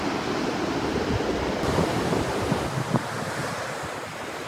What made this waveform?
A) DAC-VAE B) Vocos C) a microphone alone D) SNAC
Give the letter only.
C